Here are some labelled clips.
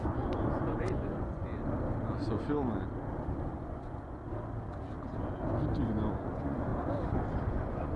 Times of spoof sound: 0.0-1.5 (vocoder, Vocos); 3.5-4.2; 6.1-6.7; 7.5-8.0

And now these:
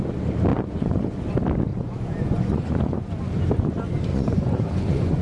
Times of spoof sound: 0.5-1.1 (vocoder, Vocos); 1.7-3.2; 4.1-5.2